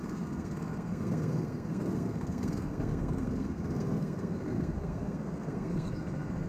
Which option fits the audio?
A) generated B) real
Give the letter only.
A